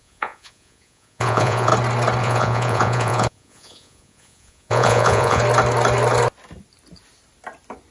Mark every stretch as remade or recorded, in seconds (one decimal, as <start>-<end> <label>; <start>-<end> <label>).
0.0-1.7 remade; 1.7-2.2 recorded; 2.2-5.4 remade; 5.4-7.9 recorded

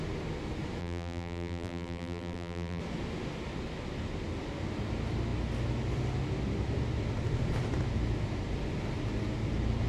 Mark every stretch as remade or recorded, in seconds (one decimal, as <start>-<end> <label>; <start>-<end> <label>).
0.0-0.8 recorded; 0.8-2.8 remade; 2.8-9.9 recorded

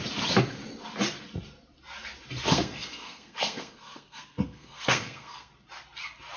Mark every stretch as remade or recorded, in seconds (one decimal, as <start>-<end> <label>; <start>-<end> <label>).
0.0-2.5 recorded; 2.5-5.5 remade; 5.5-6.4 recorded

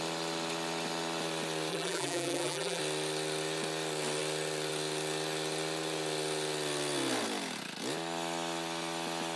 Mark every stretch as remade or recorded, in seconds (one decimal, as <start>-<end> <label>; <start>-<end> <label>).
0.0-1.7 recorded; 1.7-2.8 remade; 2.8-9.4 recorded

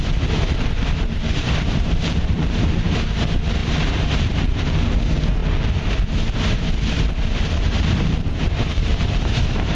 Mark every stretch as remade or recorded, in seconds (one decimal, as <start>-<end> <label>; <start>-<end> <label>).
0.0-9.8 remade

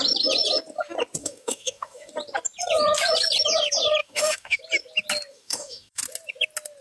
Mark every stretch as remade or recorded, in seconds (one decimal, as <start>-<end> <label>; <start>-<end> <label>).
0.0-1.2 recorded; 1.2-2.1 remade; 2.1-4.0 recorded; 4.0-4.6 remade; 4.6-5.3 recorded; 5.3-6.0 remade; 6.0-6.8 recorded